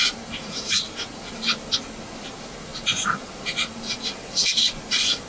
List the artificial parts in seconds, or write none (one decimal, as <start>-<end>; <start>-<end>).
none